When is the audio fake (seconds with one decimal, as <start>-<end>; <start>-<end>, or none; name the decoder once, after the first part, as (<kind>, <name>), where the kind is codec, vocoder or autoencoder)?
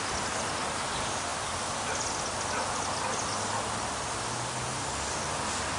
none